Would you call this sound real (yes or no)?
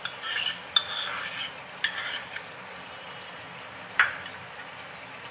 yes